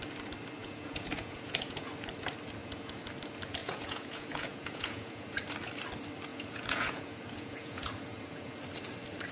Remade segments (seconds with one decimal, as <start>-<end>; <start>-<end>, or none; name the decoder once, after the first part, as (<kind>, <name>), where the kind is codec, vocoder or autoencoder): 0.6-1.9 (vocoder, Vocos); 2.6-3.1; 3.6-5.4; 6.3-8.5